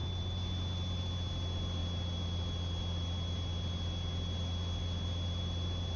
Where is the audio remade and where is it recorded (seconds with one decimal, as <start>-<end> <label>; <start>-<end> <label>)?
0.0-6.0 recorded